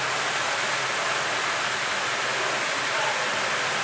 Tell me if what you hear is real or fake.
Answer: real